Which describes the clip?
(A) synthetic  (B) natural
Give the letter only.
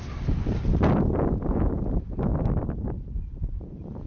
B